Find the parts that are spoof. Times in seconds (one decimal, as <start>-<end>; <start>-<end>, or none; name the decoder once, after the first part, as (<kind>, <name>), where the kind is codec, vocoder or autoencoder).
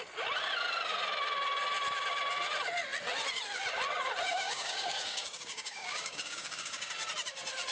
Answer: 4.3-6.9 (codec, DAC)